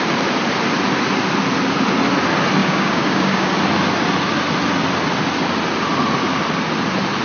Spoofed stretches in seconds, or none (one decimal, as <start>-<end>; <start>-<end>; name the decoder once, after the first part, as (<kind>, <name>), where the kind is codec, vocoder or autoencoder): 2.6-3.5 (codec, DAC)